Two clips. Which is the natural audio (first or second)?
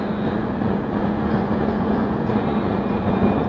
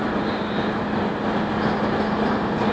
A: second